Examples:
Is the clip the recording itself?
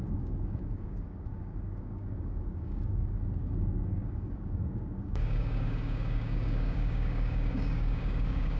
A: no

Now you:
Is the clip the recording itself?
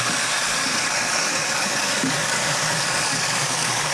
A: no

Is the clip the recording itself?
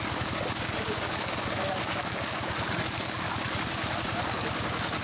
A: no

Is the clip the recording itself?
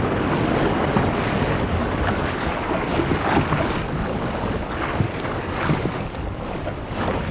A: no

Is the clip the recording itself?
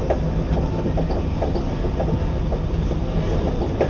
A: yes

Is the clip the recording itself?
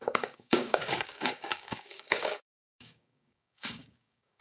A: no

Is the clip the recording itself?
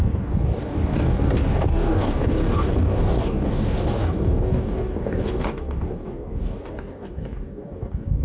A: no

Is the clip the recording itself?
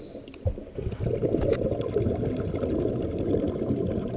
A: yes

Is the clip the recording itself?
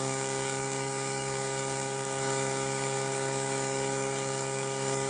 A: no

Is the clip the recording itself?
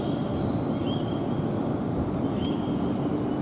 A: yes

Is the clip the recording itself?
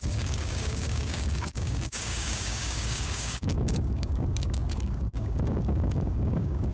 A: no